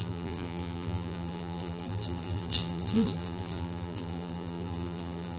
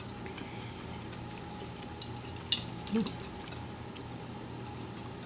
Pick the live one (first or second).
second